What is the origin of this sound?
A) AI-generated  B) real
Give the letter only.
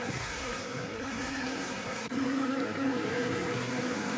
A